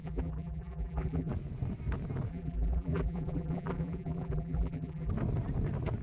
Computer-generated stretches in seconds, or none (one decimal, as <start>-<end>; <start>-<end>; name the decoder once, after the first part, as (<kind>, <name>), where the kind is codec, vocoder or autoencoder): 0.0-1.3 (vocoder, BigVGAN v2); 2.3-5.1